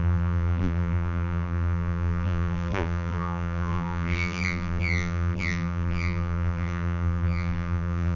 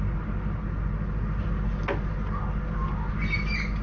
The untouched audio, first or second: second